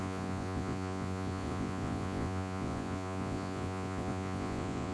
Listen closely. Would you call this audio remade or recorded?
remade